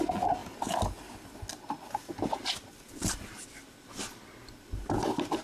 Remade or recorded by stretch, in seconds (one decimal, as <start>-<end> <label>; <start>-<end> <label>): 0.0-5.4 recorded